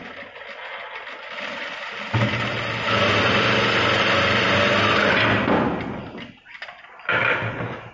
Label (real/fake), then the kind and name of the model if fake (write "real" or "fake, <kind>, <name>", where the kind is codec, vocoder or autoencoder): real